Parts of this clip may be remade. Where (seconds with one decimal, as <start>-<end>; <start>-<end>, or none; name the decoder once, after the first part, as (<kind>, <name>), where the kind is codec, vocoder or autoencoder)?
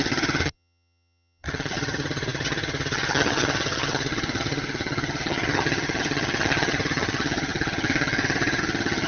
0.0-9.1 (vocoder, HiFi-GAN)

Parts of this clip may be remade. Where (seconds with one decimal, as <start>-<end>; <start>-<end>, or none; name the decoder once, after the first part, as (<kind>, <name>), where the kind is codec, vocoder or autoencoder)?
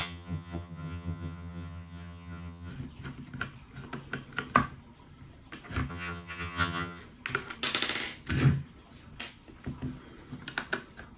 0.0-2.7 (vocoder, HiFi-GAN); 5.9-7.0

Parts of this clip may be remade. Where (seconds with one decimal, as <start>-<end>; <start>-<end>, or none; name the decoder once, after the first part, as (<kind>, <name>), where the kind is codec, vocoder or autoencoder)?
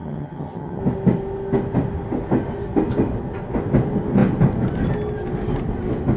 0.0-0.8 (vocoder, HiFi-GAN)